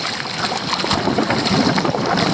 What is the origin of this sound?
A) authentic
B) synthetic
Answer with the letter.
A